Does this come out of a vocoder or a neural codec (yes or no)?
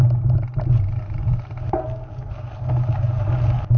no